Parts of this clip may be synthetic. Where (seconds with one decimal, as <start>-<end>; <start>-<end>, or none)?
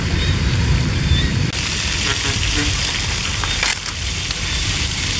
0.0-1.3; 2.5-3.7; 4.4-5.2